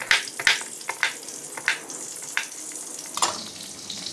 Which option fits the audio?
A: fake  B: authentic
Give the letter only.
B